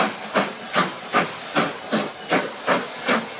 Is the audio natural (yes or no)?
yes